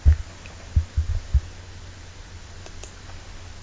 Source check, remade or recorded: recorded